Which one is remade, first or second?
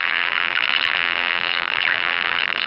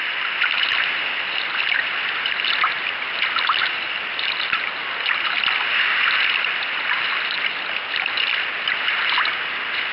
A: first